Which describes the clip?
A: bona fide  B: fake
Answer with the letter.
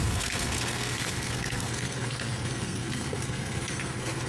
B